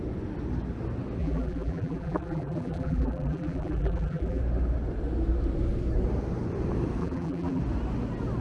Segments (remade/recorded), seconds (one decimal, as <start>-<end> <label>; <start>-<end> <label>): 0.0-1.2 recorded; 1.2-4.4 remade; 4.4-7.0 recorded; 7.0-7.6 remade; 7.6-8.4 recorded